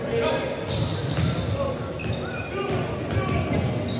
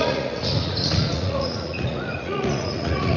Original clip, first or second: first